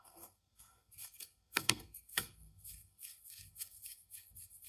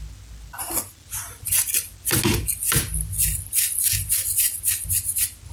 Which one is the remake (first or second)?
first